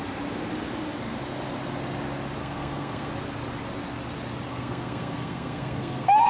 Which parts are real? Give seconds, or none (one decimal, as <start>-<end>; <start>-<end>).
0.0-2.4; 3.1-4.5